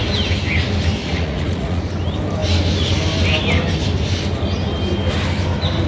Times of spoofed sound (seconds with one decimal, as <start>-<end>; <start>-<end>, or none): 1.0-1.8